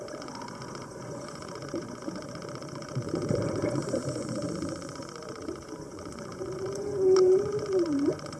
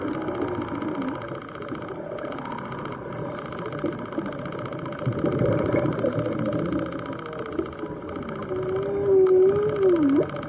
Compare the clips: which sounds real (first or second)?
second